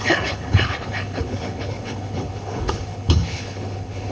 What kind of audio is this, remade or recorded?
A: remade